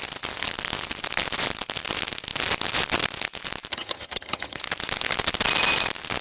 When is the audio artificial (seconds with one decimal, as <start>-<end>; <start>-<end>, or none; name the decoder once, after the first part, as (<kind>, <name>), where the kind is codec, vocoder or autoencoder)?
3.7-4.6 (vocoder, HiFi-GAN)